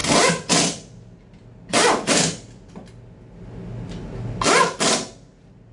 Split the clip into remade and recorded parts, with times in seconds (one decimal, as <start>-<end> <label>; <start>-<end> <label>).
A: 0.0-5.7 recorded